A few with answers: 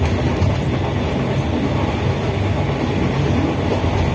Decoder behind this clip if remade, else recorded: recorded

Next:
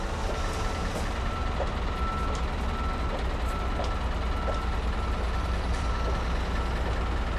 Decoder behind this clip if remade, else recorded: recorded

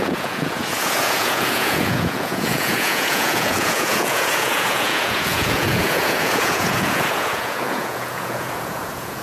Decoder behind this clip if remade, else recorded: remade, vocoder, Vocos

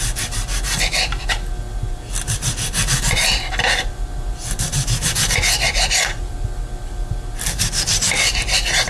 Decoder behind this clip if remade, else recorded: recorded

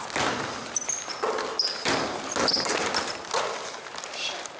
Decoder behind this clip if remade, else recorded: recorded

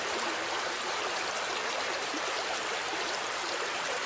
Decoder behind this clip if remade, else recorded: recorded